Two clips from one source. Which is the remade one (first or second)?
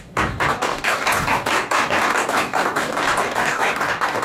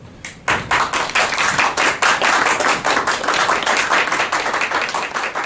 first